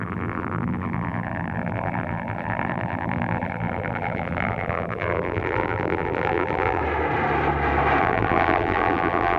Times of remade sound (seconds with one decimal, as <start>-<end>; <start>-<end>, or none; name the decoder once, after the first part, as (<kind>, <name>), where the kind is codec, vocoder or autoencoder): 0.0-6.8 (vocoder, BigVGAN v2); 8.0-9.4

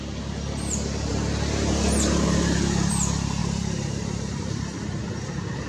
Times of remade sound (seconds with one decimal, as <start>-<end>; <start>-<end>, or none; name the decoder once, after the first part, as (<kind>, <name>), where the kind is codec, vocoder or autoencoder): 3.4-5.0 (vocoder, BigVGAN v2)

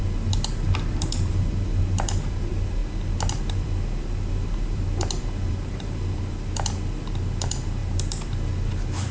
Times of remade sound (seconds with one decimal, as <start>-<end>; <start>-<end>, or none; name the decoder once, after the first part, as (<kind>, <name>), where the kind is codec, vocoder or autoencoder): 0.0-2.8 (vocoder, BigVGAN v2); 3.4-9.1

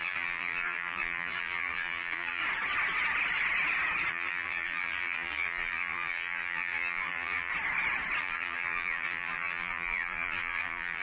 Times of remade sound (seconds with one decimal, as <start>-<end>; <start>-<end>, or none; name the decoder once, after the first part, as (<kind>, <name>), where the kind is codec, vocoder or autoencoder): 0.0-2.4 (vocoder, BigVGAN v2); 4.1-7.5; 8.2-11.0

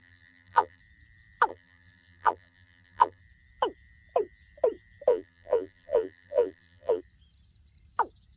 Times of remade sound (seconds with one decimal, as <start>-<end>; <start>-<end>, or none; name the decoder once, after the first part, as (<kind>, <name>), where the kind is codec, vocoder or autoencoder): 0.0-0.8 (vocoder, BigVGAN v2); 1.5-3.2; 5.1-7.0

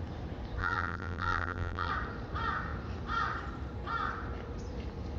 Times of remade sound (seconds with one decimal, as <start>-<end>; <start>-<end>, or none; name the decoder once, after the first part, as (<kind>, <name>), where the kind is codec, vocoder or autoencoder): 0.6-1.9 (vocoder, BigVGAN v2)